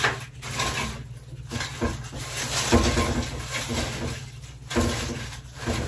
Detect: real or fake real